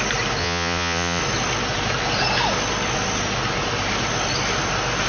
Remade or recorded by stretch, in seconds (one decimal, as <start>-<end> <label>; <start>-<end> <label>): 0.0-0.4 recorded; 0.4-1.2 remade; 1.2-5.1 recorded